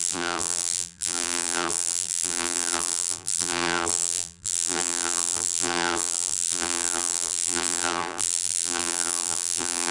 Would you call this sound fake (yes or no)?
yes